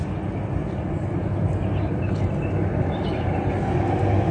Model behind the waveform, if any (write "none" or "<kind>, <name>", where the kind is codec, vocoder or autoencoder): none